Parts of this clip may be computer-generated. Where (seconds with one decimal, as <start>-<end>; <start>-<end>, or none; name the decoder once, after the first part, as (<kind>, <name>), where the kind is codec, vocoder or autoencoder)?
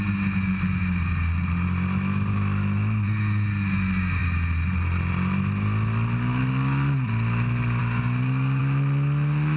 none